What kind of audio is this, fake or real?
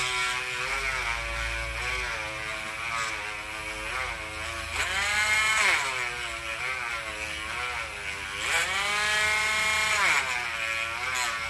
real